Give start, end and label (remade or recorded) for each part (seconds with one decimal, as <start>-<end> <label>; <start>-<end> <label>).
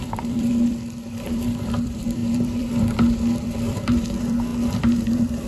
0.0-5.5 remade